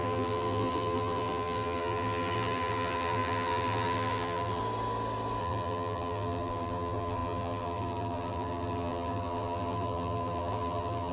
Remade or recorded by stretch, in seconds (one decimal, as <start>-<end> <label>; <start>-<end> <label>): 0.0-4.6 remade; 4.6-5.4 recorded; 5.4-11.1 remade